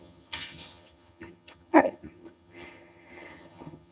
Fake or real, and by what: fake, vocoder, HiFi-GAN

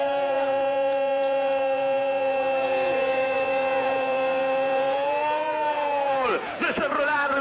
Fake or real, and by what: fake, vocoder, Vocos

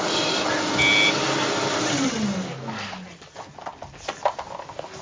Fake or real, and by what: real